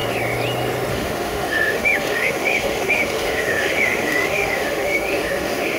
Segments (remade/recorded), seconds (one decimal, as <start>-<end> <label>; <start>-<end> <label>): 0.0-0.9 recorded; 0.9-5.8 remade